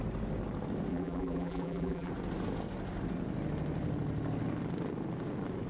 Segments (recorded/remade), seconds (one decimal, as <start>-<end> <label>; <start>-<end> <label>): 0.0-0.9 recorded; 0.9-2.1 remade; 2.1-5.7 recorded